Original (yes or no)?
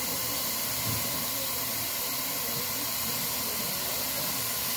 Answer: yes